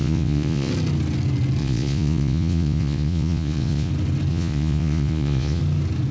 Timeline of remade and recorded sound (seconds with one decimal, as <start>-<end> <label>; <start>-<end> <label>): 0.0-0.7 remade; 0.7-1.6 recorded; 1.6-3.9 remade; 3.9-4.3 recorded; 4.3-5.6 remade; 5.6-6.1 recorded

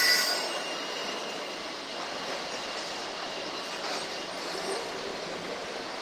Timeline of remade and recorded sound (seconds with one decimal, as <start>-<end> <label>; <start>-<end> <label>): 0.0-6.0 recorded

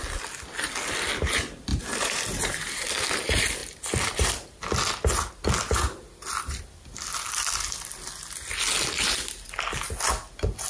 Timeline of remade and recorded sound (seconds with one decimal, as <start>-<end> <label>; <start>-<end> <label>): 0.0-1.7 recorded; 1.7-2.9 remade; 2.9-10.7 recorded